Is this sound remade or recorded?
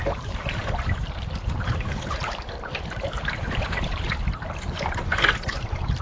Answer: remade